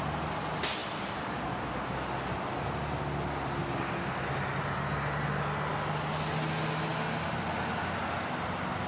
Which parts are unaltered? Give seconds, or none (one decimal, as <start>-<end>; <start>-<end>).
0.0-8.9